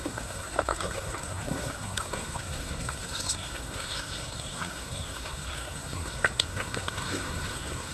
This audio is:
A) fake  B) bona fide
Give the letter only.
A